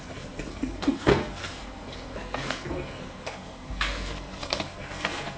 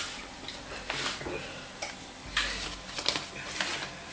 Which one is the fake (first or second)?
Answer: first